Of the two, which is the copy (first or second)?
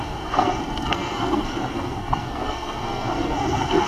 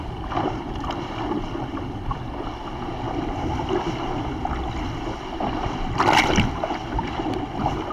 first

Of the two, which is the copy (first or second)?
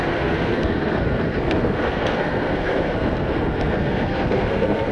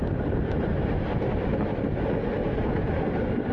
first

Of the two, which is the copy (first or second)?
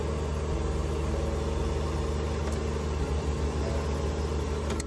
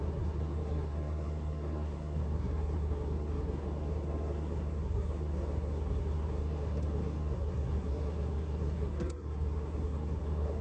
second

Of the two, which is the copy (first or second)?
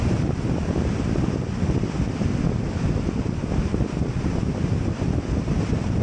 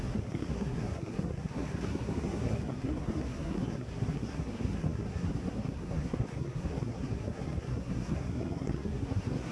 second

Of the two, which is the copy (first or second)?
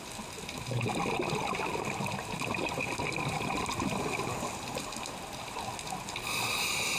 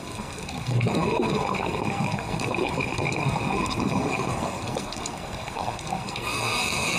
second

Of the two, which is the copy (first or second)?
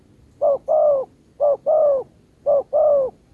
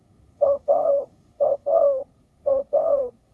second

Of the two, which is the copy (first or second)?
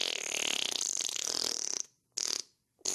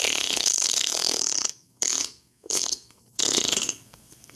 second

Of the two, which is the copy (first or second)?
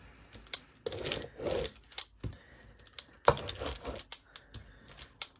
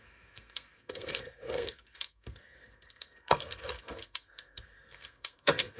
second